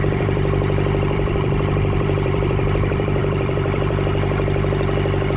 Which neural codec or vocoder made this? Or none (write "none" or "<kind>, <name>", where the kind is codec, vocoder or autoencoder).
vocoder, BigVGAN v2